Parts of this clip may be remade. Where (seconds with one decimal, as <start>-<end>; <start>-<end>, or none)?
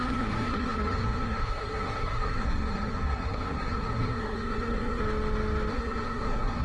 0.0-5.0; 5.7-6.6